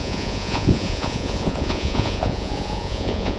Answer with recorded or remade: remade